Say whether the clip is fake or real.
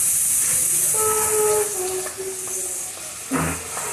real